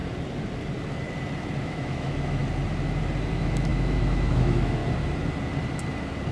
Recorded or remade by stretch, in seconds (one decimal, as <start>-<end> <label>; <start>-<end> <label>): 0.0-1.6 recorded; 1.6-2.4 remade; 2.4-3.3 recorded; 3.3-4.8 remade; 4.8-6.3 recorded